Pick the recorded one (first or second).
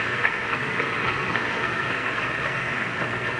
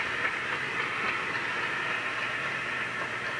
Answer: second